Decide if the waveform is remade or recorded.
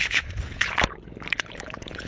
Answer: remade